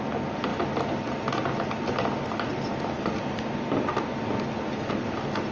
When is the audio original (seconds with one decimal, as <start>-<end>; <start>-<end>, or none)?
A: 0.0-5.5